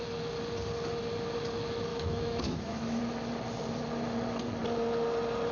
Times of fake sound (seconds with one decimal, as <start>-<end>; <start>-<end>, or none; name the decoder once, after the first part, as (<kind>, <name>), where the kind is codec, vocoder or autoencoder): 1.9-3.0 (autoencoder, DAC-VAE)